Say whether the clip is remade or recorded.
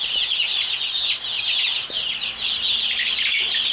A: recorded